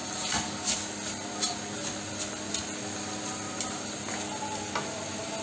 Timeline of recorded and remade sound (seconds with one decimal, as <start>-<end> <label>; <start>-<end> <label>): 0.0-5.4 recorded